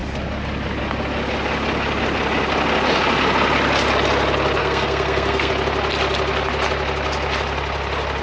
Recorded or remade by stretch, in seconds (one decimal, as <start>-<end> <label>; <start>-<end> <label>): 0.0-4.6 recorded; 4.6-5.5 remade; 5.5-8.2 recorded